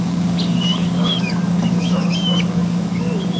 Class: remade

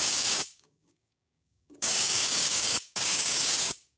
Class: remade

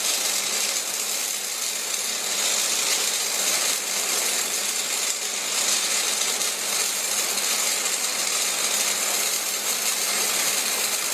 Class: recorded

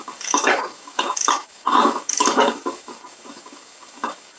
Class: remade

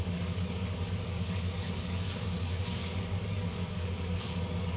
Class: remade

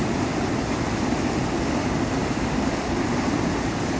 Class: recorded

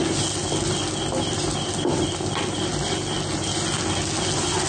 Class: recorded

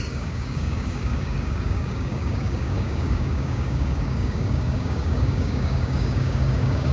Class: remade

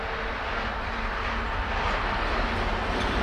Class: recorded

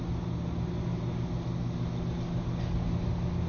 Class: recorded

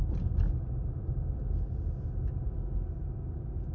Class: recorded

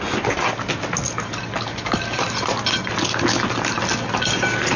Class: recorded